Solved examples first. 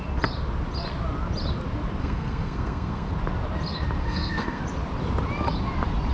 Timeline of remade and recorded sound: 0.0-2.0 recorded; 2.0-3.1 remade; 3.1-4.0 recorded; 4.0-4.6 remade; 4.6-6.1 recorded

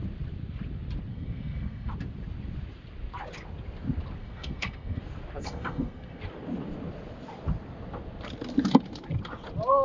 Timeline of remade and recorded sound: 0.0-1.1 recorded; 1.1-1.9 remade; 1.9-4.2 recorded; 4.2-5.0 remade; 5.0-5.4 recorded; 5.4-6.2 remade; 6.2-9.8 recorded

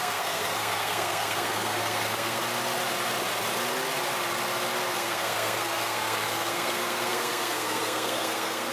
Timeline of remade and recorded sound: 0.0-2.4 remade; 2.4-4.9 recorded; 4.9-8.7 remade

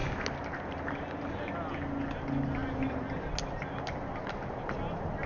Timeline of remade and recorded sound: 0.0-5.3 recorded

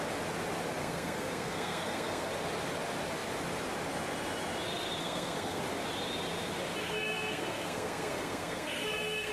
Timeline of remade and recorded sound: 0.0-0.8 recorded; 0.8-2.3 remade; 2.3-5.0 recorded; 5.0-5.6 remade; 5.6-6.8 recorded; 6.8-9.3 remade